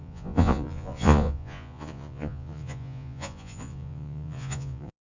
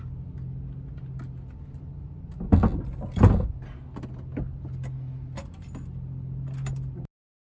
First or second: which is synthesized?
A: first